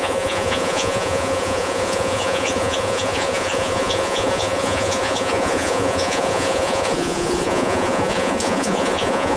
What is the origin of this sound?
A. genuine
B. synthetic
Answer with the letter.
B